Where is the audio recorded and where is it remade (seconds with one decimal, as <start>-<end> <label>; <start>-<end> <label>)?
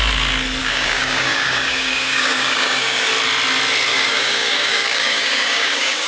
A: 0.0-0.6 recorded; 0.6-3.1 remade; 3.1-3.9 recorded; 3.9-6.1 remade